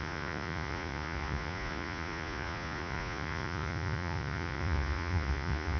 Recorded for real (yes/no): no